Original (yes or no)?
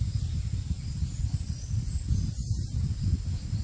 yes